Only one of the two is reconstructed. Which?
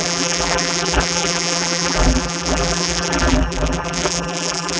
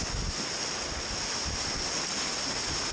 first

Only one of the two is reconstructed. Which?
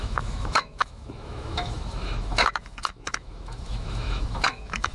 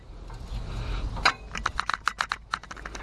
first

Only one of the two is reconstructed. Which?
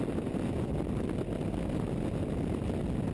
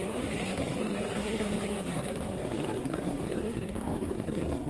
second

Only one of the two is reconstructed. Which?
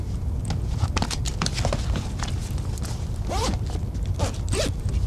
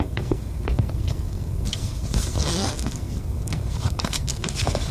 second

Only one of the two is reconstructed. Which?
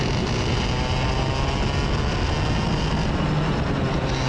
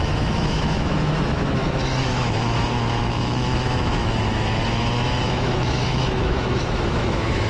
second